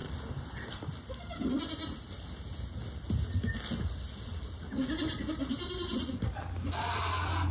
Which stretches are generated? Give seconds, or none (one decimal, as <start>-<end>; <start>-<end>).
0.5-1.8; 5.5-7.5